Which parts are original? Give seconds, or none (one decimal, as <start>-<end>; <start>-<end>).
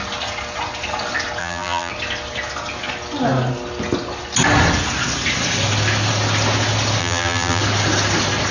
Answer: 0.0-1.4; 1.9-7.0; 7.6-8.5